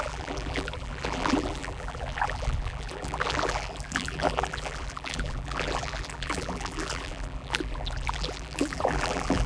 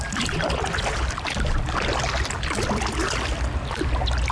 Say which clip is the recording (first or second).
second